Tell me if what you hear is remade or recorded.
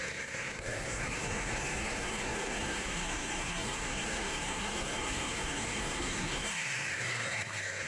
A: remade